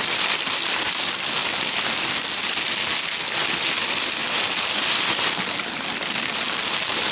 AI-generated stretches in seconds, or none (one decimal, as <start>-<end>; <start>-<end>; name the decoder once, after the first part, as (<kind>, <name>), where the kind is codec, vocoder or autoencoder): 0.0-1.4 (vocoder, BigVGAN v2); 3.8-7.1

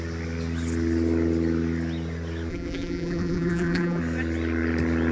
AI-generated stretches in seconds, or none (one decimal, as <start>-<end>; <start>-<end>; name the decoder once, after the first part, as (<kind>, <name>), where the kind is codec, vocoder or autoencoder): 2.5-4.0 (vocoder, BigVGAN v2)